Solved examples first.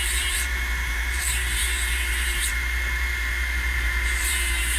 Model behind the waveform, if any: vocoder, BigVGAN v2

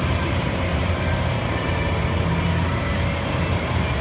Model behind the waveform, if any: none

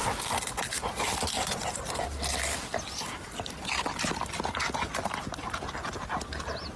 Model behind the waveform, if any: none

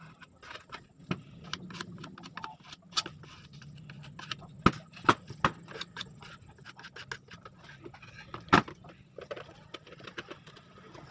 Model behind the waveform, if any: none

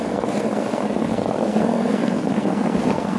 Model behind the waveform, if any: codec, SNAC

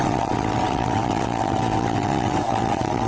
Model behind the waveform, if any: vocoder, WaveNeXt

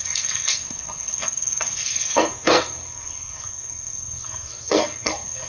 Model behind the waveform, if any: codec, SNAC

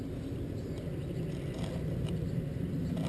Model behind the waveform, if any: none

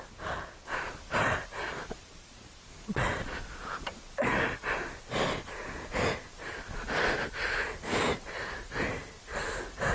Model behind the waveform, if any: none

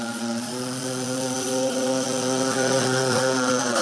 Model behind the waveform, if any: vocoder, Vocos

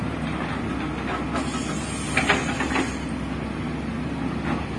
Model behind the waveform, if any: none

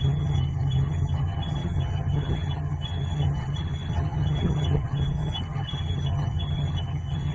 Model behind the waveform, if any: vocoder, HiFi-GAN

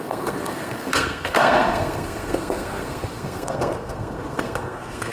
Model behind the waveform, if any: codec, SNAC